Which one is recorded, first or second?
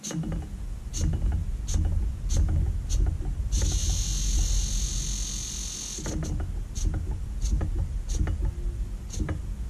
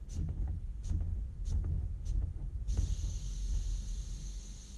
first